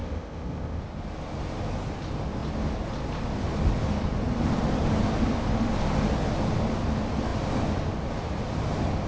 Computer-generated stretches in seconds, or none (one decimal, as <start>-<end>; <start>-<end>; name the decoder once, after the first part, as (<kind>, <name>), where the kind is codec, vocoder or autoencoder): 0.0-0.8 (codec, ZipCodec)

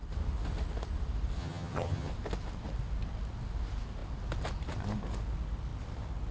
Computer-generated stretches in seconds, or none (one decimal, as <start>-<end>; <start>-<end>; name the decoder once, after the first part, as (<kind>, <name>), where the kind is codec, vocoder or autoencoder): 1.4-2.1 (vocoder, HiFi-GAN)